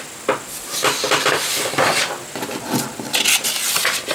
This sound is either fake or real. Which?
real